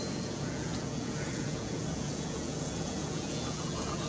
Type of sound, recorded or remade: remade